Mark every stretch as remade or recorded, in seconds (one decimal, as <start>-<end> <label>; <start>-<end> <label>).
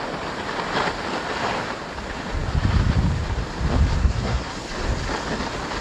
0.0-4.0 recorded; 4.0-4.5 remade; 4.5-5.8 recorded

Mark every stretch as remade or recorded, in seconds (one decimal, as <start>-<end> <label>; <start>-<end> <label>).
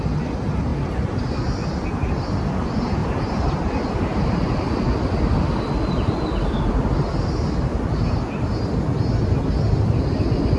0.0-10.6 recorded